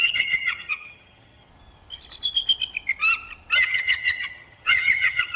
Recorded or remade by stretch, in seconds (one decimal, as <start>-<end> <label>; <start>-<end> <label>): 0.0-1.5 remade; 1.5-3.6 recorded; 3.6-5.4 remade